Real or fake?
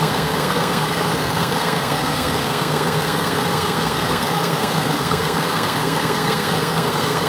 fake